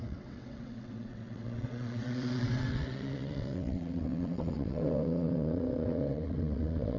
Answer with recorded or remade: remade